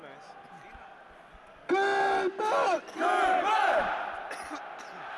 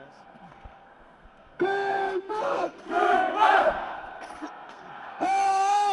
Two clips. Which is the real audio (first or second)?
first